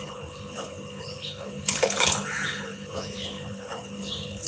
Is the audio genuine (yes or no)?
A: no